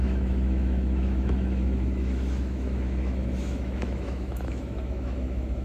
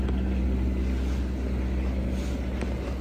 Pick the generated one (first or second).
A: first